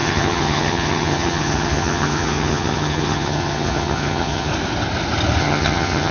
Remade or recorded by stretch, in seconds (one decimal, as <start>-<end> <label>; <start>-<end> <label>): 0.0-4.5 remade; 4.5-5.4 recorded; 5.4-6.1 remade